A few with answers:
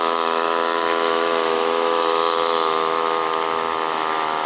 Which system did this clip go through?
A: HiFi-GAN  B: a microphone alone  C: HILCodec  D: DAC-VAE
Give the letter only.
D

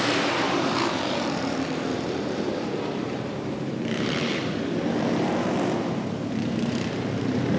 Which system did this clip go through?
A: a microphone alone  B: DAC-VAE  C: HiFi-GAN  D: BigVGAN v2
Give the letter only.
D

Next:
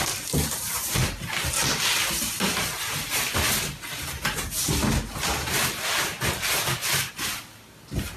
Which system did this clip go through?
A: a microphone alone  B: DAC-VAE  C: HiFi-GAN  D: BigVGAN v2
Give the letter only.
A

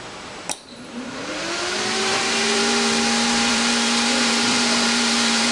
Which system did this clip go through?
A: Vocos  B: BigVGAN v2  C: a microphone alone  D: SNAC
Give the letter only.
B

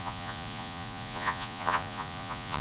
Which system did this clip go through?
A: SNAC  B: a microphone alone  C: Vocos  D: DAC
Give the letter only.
C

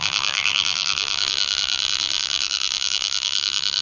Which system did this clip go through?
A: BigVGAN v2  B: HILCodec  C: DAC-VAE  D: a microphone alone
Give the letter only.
A